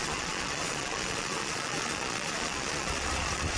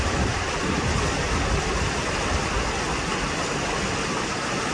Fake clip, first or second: first